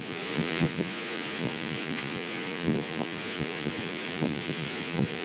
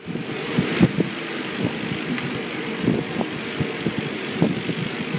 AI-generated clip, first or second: first